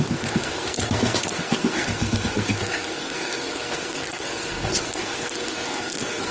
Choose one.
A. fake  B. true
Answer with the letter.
A